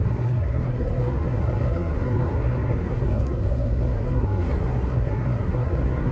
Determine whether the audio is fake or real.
fake